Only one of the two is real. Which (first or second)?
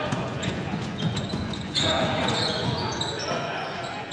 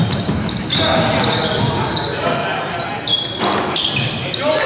second